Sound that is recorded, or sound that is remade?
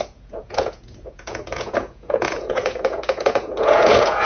remade